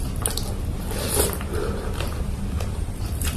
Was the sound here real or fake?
real